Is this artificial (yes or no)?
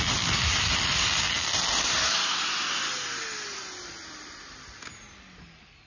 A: no